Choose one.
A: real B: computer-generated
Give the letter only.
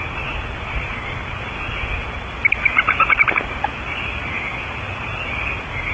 A